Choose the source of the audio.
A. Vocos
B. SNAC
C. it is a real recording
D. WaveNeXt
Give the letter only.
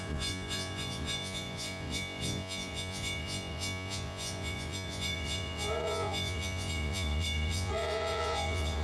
A